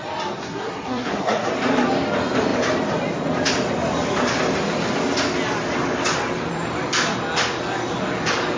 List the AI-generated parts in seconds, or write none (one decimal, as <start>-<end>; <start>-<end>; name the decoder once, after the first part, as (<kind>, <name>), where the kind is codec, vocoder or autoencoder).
0.4-1.5 (codec, SNAC)